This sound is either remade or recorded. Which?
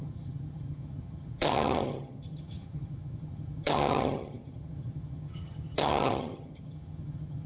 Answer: remade